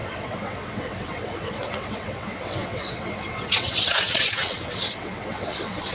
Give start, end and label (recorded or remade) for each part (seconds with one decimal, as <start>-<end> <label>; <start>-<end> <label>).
0.0-5.9 remade